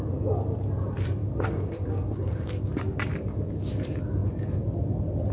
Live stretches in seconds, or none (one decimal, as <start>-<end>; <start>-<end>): 0.0-1.2; 2.7-5.3